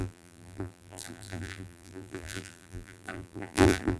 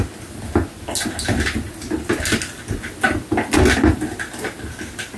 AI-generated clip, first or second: first